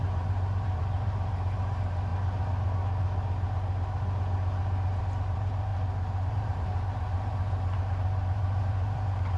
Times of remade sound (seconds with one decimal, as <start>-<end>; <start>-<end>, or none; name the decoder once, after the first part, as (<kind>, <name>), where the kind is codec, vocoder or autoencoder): 0.0-2.1 (vocoder, BigVGAN v2); 5.0-5.7; 6.3-9.4

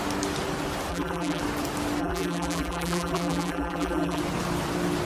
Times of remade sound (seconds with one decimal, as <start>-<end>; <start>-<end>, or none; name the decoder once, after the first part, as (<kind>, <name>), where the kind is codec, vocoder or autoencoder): 0.9-1.4 (vocoder, BigVGAN v2); 2.0-4.2